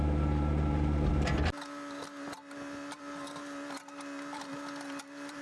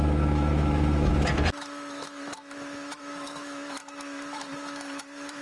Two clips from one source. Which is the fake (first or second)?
second